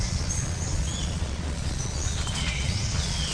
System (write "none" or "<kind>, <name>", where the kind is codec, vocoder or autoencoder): vocoder, Vocos